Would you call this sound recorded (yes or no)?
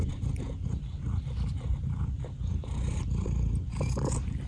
no